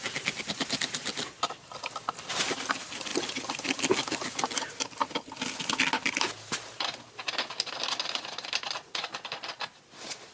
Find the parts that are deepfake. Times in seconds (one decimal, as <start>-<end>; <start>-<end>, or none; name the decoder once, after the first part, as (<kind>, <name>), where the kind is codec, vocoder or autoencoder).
none